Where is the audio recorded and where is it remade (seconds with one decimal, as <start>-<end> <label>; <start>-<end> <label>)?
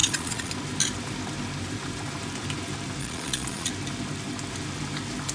0.0-0.5 remade; 0.5-3.0 recorded; 3.0-3.7 remade; 3.7-5.3 recorded